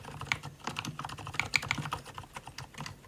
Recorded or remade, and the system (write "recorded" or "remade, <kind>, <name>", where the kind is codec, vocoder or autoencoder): recorded